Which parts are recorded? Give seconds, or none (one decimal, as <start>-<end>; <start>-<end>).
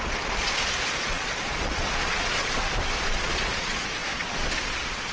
2.4-3.0